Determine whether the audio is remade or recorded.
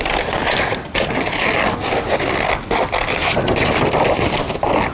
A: recorded